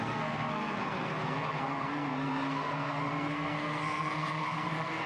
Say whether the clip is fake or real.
fake